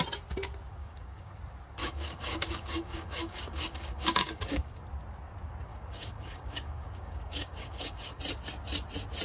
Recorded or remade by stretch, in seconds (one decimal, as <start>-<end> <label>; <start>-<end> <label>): 0.0-0.8 recorded; 0.8-1.4 remade; 1.4-1.8 recorded; 1.8-4.8 remade; 4.8-5.7 recorded; 5.7-8.2 remade; 8.2-9.2 recorded